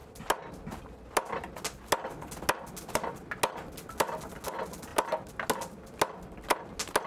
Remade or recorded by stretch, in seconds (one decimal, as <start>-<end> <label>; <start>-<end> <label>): 0.0-7.1 recorded